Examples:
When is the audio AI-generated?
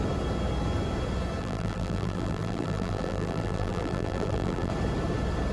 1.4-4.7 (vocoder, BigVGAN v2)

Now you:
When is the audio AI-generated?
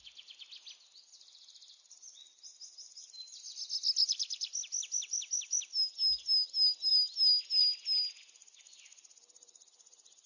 none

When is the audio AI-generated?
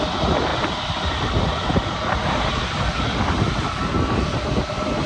0.5-3.0 (vocoder, BigVGAN v2)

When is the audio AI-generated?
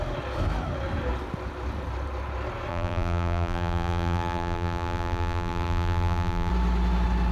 2.7-6.5 (vocoder, BigVGAN v2)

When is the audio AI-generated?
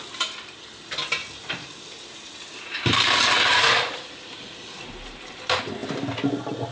1.2-5.2 (vocoder, BigVGAN v2)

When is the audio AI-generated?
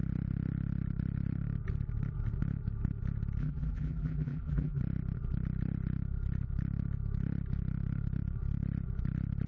3.4-4.8 (vocoder, BigVGAN v2)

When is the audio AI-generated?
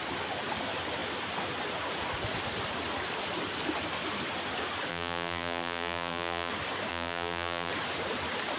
4.9-6.5 (vocoder, BigVGAN v2); 6.9-7.7